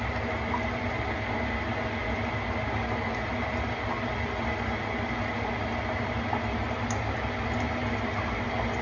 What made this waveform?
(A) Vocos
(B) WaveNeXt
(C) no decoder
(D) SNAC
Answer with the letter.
C